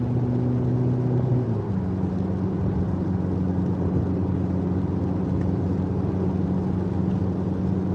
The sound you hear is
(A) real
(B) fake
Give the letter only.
A